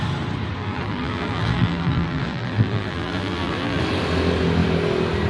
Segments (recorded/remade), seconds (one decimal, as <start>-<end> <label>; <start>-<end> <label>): 0.0-0.6 recorded; 0.6-3.8 remade; 3.8-5.3 recorded